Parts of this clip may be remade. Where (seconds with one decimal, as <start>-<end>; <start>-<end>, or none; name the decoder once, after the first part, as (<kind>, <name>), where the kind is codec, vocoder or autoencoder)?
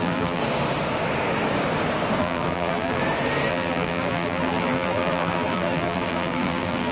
0.0-0.4 (vocoder, BigVGAN v2); 2.2-3.0; 3.5-6.9